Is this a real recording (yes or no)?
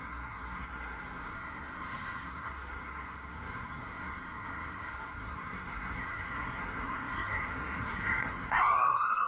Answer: no